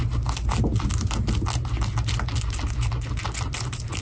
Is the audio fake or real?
real